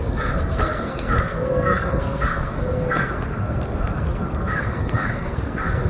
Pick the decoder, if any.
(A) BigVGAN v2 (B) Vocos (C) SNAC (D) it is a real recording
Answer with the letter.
C